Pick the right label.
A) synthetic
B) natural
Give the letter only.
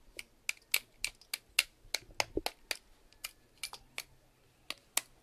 B